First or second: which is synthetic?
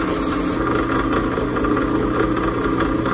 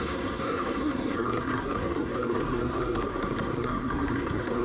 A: second